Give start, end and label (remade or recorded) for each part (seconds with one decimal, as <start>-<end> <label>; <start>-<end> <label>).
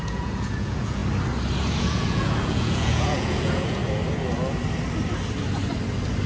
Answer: 0.0-1.0 remade; 1.0-1.8 recorded; 1.8-3.8 remade; 3.8-6.3 recorded